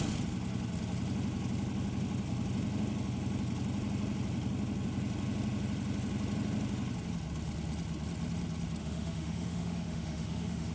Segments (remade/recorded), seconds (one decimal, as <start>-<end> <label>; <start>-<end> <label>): 0.0-8.8 recorded; 8.8-10.7 remade